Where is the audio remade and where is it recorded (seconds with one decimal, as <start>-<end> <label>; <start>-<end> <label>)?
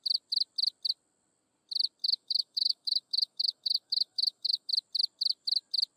0.0-2.0 recorded; 2.0-4.7 remade; 4.7-6.0 recorded